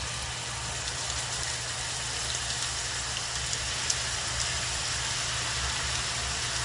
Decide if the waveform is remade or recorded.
recorded